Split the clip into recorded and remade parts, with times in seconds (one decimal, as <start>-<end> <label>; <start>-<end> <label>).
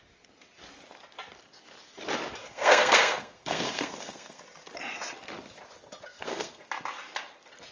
0.0-2.4 recorded; 2.4-4.4 remade; 4.4-6.1 recorded; 6.1-6.7 remade; 6.7-7.7 recorded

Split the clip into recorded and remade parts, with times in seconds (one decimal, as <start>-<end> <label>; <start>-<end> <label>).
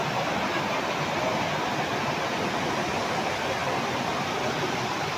0.0-5.2 recorded